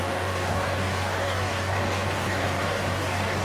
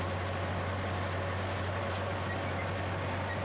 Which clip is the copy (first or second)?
first